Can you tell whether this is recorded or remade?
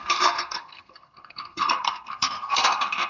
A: remade